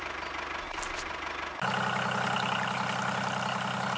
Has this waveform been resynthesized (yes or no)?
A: no